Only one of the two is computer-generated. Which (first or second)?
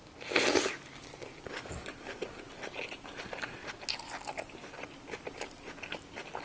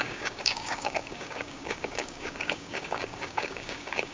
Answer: second